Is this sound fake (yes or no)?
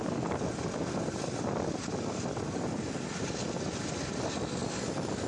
no